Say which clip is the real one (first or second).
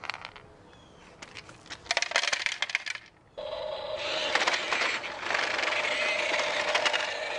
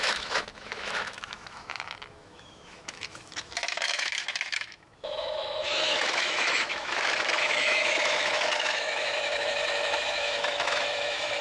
first